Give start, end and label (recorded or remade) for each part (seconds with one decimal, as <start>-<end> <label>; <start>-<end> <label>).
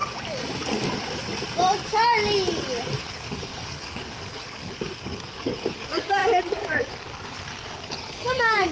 0.0-3.0 recorded; 3.0-8.7 remade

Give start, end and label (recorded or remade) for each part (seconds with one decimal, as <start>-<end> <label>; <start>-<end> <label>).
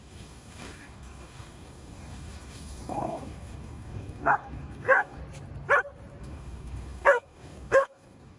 0.0-5.2 remade; 5.2-6.2 recorded; 6.2-8.4 remade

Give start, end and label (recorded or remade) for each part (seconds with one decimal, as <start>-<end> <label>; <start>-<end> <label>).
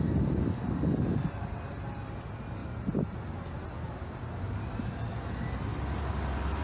0.0-6.6 recorded